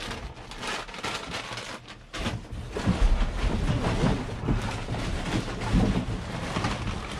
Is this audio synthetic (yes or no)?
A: no